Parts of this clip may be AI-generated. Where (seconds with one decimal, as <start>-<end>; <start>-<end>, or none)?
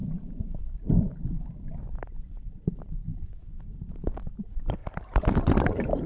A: 0.6-3.0; 3.7-6.1